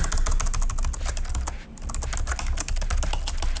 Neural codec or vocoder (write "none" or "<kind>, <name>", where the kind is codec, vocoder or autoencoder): none